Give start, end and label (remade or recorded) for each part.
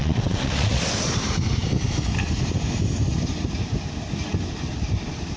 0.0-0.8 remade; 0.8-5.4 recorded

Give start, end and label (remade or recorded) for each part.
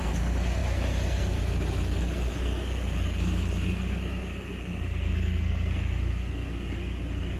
0.0-7.4 remade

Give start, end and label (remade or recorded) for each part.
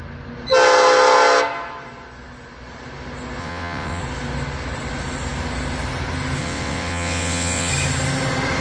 0.0-3.4 recorded; 3.4-4.0 remade; 4.0-6.4 recorded; 6.4-7.7 remade; 7.7-8.6 recorded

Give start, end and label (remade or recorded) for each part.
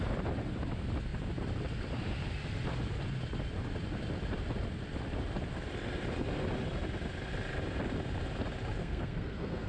0.0-8.8 recorded; 8.8-9.7 remade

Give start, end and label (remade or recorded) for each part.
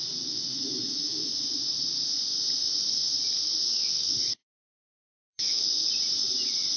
0.0-0.5 recorded; 0.5-1.3 remade; 1.3-3.6 recorded; 3.6-5.9 remade; 5.9-6.8 recorded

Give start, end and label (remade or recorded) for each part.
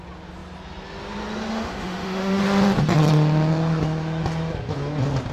0.0-1.5 recorded; 1.5-2.4 remade; 2.4-5.3 recorded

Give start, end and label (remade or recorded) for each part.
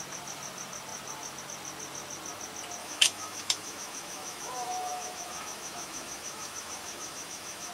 0.0-2.8 recorded; 2.8-7.7 remade